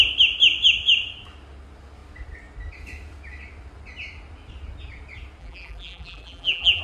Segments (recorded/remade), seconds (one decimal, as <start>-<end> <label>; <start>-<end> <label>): 0.0-5.4 recorded; 5.4-6.8 remade